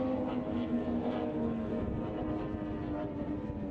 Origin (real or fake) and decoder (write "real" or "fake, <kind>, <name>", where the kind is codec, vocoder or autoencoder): real